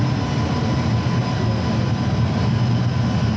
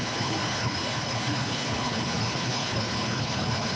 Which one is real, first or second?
first